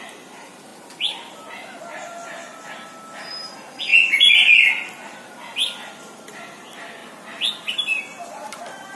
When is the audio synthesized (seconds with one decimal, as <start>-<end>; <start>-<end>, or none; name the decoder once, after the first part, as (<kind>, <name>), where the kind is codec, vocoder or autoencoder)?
none